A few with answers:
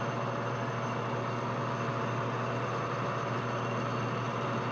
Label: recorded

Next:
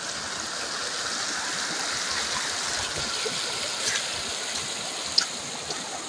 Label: recorded